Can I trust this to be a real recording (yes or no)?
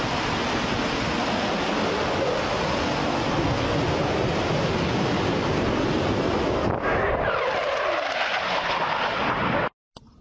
yes